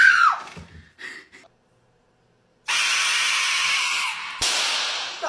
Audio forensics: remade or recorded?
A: recorded